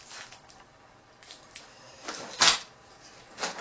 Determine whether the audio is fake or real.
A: real